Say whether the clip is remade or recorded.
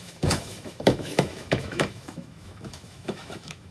remade